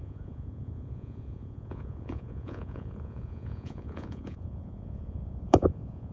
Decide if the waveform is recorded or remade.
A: remade